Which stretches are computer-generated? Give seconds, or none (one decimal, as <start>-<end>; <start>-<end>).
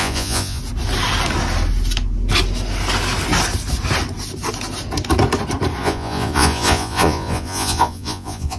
0.0-0.6; 5.8-8.6